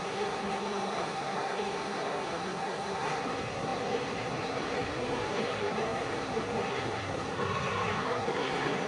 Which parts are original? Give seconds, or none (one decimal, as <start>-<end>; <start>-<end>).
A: none